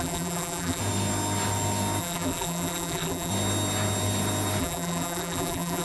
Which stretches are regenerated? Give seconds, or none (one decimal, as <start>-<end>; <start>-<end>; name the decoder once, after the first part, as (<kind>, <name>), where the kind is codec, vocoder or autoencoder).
0.0-0.8 (vocoder, BigVGAN v2); 2.0-3.3; 4.6-5.8